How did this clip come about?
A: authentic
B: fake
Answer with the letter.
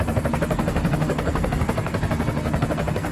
B